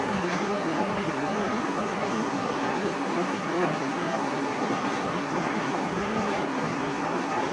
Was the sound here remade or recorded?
remade